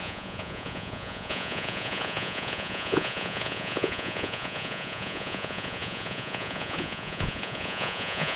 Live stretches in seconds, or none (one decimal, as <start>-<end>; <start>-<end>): none